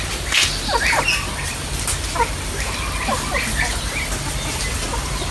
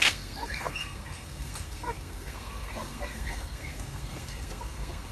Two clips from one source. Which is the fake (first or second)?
second